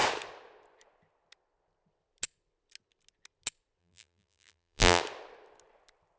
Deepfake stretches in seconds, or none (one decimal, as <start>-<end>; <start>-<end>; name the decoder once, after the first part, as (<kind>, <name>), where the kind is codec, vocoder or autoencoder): 3.8-5.0 (vocoder, BigVGAN v2)